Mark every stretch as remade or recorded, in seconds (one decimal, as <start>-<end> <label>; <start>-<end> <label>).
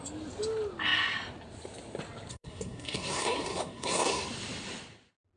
0.0-2.3 recorded; 2.3-4.2 remade; 4.2-5.4 recorded